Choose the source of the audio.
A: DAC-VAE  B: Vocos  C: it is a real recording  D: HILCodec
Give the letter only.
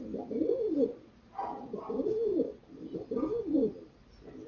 C